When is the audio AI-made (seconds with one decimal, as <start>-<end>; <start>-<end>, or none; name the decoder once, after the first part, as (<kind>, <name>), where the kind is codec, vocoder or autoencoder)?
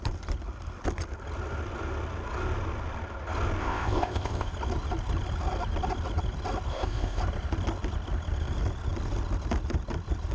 3.6-4.5 (codec, ZipCodec); 6.7-7.2